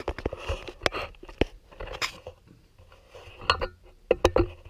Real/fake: real